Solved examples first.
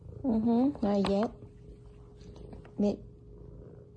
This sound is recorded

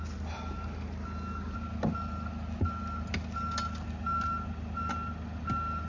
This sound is recorded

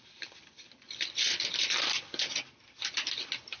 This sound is recorded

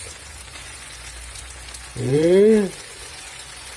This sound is remade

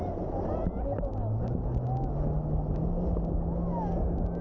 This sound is recorded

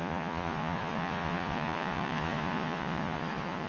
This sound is remade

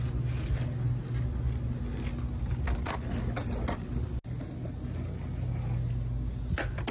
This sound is recorded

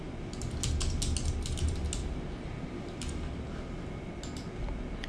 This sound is recorded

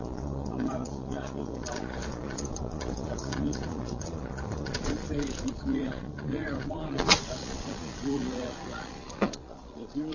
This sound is remade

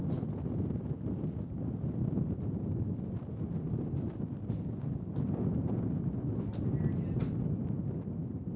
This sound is recorded